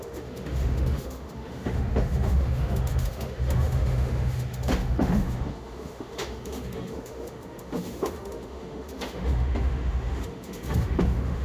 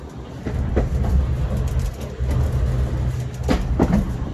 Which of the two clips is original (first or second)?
second